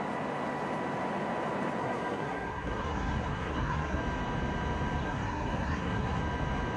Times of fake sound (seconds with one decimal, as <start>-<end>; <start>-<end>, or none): 1.8-4.0; 5.0-6.2